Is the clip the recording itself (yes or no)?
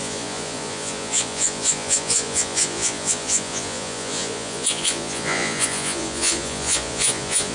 no